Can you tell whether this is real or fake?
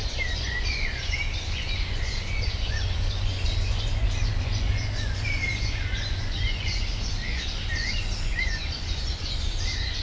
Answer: fake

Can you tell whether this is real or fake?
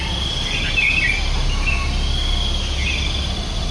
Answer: real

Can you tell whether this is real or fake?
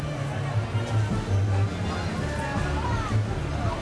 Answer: real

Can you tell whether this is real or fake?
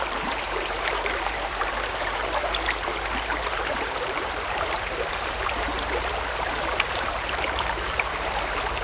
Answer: fake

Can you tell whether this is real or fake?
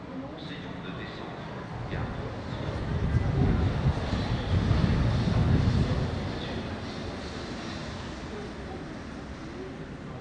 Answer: real